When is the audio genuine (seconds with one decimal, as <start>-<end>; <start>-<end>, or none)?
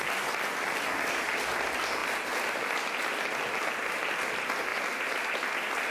0.0-5.9